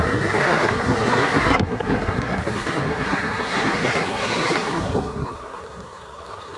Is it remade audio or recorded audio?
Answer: remade